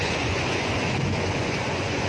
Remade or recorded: remade